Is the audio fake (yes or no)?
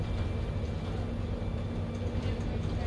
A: no